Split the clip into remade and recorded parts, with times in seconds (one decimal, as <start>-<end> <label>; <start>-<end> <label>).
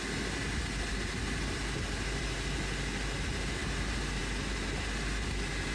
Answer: 0.0-5.7 recorded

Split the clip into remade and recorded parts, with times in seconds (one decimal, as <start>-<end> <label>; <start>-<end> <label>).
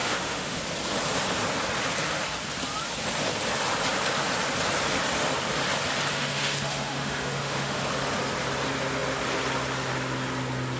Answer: 0.0-0.6 remade; 0.6-6.1 recorded; 6.1-7.8 remade; 7.8-10.8 recorded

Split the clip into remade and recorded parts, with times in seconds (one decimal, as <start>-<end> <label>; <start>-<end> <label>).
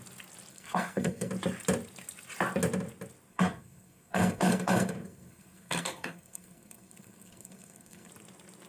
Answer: 0.0-0.5 recorded; 0.5-1.3 remade; 1.3-3.3 recorded; 3.3-8.1 remade; 8.1-8.7 recorded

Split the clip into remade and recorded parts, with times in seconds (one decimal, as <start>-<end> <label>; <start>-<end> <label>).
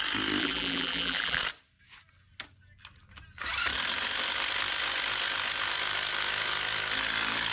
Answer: 0.0-0.4 recorded; 0.4-1.4 remade; 1.4-7.5 recorded